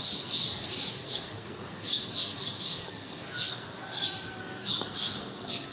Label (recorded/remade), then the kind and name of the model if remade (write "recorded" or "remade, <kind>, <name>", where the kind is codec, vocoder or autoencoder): remade, codec, SNAC